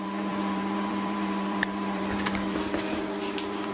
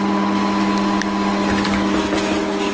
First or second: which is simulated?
first